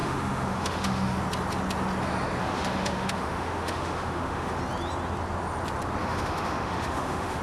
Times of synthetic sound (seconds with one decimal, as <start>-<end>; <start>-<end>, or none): 0.0-1.2; 2.4-4.6; 6.0-7.4

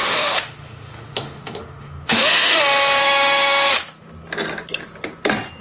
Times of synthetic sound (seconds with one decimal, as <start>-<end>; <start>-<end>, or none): 0.0-2.6; 3.0-3.7

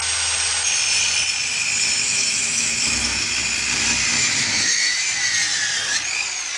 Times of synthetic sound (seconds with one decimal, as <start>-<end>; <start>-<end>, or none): 2.0-3.3; 4.2-5.0

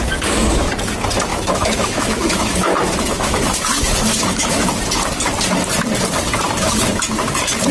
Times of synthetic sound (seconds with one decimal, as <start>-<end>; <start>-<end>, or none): 1.3-3.6; 4.1-4.6

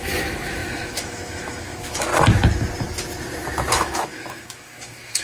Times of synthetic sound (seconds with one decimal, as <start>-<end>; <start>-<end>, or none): 0.0-2.1; 3.7-5.2

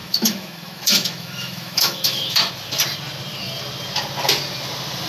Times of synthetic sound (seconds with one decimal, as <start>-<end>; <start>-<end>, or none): 0.0-2.5